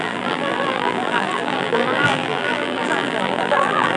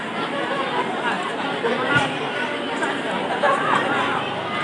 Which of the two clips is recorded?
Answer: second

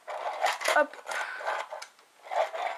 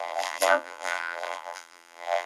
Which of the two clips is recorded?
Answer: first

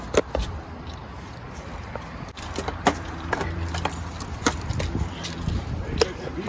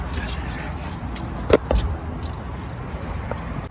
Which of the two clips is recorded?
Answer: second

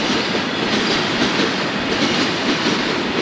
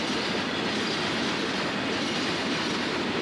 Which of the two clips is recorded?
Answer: second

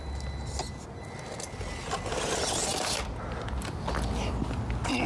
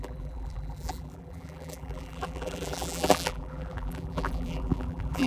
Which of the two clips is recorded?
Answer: first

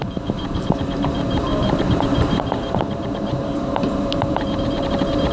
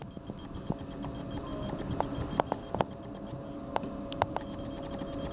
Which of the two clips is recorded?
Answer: second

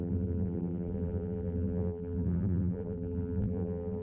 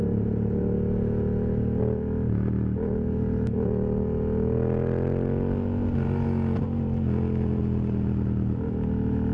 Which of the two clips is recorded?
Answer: second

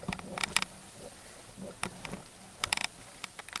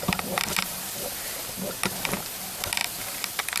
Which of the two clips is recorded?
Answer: first